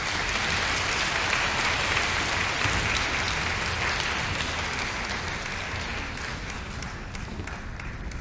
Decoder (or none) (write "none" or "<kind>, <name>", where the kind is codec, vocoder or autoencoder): none